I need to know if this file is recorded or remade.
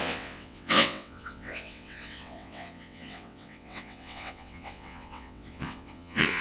remade